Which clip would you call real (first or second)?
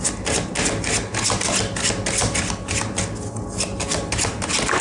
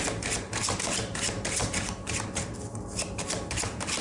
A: first